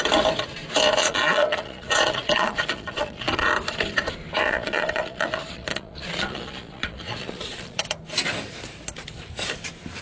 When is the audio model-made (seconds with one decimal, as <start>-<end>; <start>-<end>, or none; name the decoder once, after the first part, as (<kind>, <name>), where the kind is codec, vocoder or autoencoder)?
1.0-3.5 (vocoder, Vocos); 4.4-7.9